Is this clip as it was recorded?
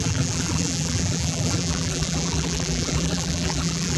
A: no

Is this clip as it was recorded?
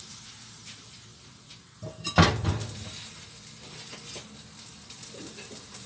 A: yes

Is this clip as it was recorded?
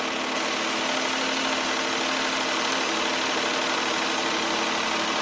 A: yes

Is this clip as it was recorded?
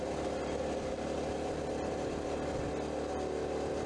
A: yes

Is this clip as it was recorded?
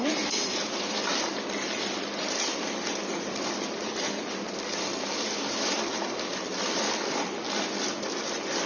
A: no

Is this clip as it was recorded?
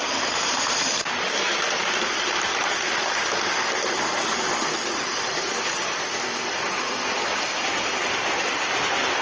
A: no